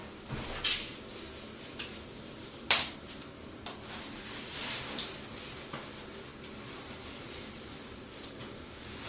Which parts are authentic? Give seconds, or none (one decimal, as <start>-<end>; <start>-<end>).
4.5-6.3; 8.4-9.1